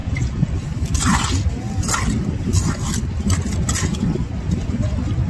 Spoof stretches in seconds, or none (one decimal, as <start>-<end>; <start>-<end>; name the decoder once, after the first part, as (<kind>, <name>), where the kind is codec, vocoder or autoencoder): 0.0-0.5 (vocoder, Vocos)